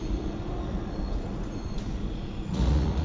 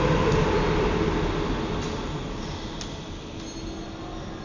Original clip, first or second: second